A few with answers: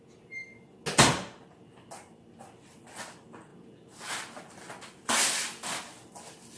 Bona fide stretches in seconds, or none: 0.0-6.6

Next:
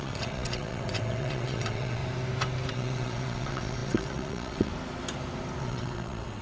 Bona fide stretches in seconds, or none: 2.0-2.7; 4.7-5.6

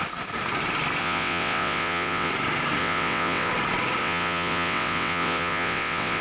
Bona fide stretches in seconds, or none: 0.0-1.0; 2.3-2.8; 3.5-4.0

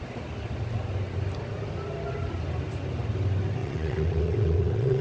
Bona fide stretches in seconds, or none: 0.0-3.6

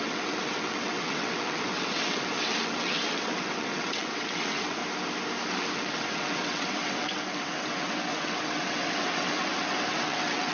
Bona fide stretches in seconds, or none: 4.8-5.5

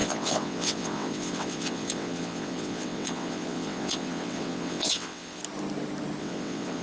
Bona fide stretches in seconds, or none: 5.4-6.2

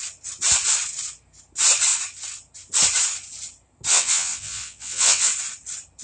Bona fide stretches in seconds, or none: 0.0-3.9; 5.3-6.0

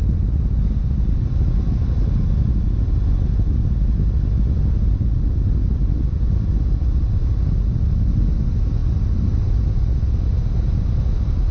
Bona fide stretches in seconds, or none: 0.0-11.5